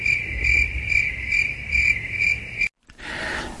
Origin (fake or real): real